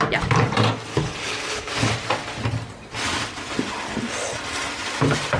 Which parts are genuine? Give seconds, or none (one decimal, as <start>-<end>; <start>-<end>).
0.0-0.9; 1.7-5.4